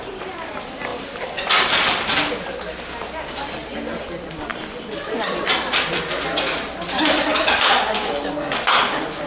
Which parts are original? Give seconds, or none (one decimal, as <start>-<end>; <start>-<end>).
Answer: 0.0-0.9; 2.3-4.5; 6.0-9.3

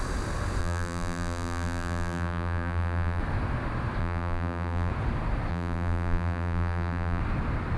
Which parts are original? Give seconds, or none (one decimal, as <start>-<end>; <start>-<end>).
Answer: 0.0-0.6; 3.2-4.0; 4.9-5.5; 7.2-7.8

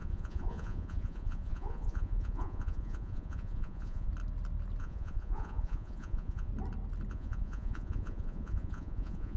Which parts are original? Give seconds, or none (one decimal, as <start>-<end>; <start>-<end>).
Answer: 4.1-4.8; 6.5-7.1

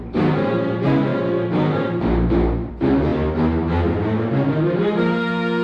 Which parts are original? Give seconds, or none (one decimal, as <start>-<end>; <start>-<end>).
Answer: 0.0-5.6